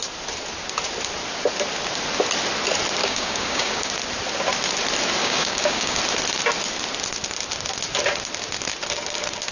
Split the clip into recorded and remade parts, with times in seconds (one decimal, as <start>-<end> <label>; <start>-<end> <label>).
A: 0.0-3.0 recorded; 3.0-3.9 remade; 3.9-5.2 recorded; 5.2-6.0 remade; 6.0-9.5 recorded